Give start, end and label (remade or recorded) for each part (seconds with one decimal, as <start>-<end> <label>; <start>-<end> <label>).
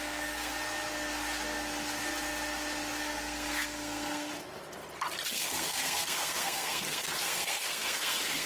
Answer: 0.0-0.5 remade; 0.5-3.0 recorded; 3.0-4.3 remade; 4.3-5.3 recorded; 5.3-8.5 remade